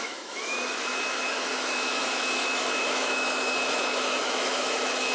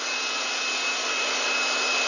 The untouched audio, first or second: second